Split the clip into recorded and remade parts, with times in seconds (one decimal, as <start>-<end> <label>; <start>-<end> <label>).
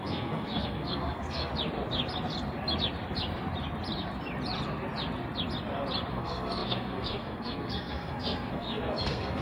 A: 0.0-1.5 remade; 1.5-6.1 recorded; 6.1-9.4 remade